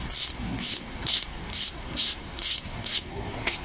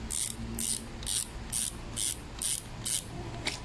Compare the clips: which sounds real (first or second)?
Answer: second